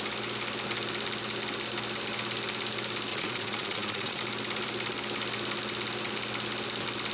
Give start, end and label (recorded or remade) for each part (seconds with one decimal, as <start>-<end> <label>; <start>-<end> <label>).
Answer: 0.0-3.1 recorded; 3.1-4.2 remade; 4.2-7.1 recorded